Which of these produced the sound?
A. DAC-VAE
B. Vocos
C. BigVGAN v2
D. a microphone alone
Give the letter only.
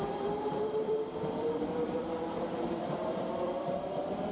C